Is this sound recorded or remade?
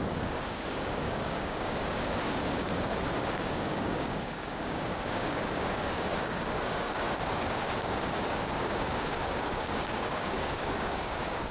remade